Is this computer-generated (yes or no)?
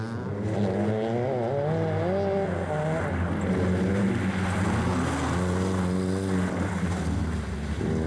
no